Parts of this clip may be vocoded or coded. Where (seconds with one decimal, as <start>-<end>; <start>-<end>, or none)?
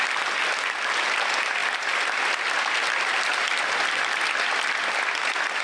none